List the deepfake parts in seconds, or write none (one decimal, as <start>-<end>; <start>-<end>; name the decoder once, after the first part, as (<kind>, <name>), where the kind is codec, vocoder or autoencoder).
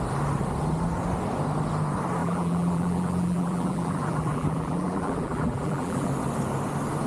2.2-6.1 (vocoder, BigVGAN v2)